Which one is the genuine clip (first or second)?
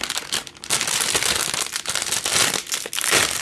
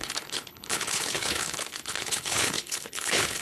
first